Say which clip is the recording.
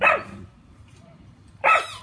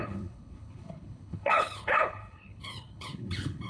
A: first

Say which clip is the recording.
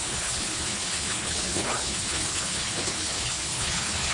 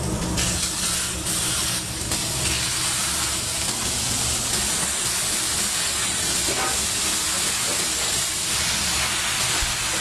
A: second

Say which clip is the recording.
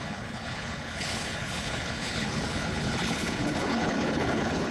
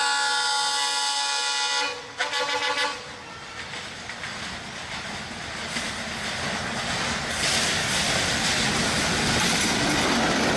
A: second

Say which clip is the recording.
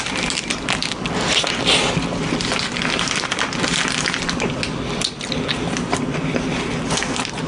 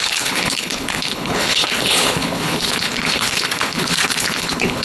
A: first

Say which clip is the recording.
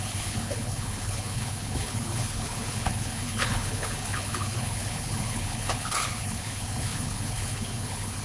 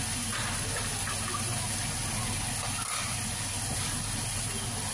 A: second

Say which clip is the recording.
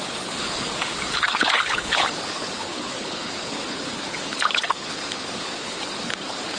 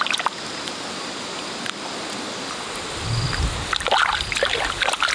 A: second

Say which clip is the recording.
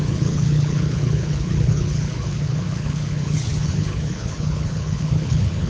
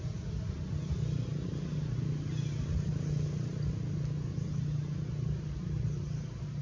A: second